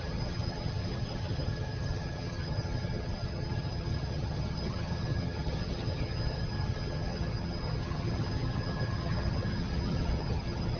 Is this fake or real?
fake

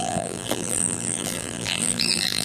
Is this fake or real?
fake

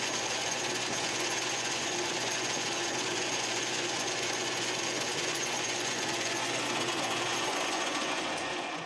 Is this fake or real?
fake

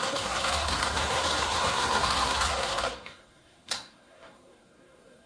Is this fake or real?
fake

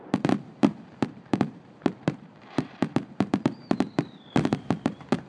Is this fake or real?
fake